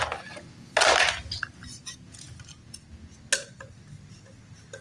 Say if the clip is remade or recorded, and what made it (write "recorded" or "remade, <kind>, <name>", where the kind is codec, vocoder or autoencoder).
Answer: recorded